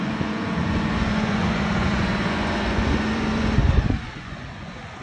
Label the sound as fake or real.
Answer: fake